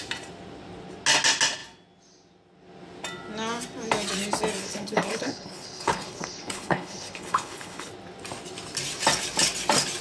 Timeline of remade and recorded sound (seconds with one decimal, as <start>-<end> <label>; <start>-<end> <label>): 0.0-4.6 recorded; 4.6-7.9 remade; 7.9-10.0 recorded